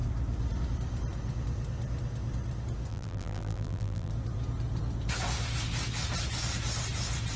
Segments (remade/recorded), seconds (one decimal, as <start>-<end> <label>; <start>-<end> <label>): 0.0-2.9 recorded; 2.9-4.1 remade; 4.1-7.4 recorded